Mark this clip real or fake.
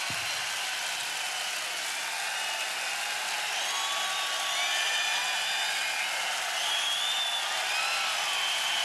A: real